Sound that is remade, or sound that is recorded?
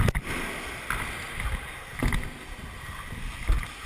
recorded